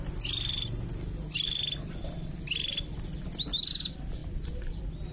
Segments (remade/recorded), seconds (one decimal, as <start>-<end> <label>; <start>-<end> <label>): 0.0-5.1 recorded